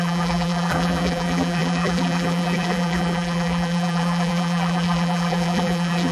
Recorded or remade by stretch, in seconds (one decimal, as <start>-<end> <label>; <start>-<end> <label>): 0.0-6.1 remade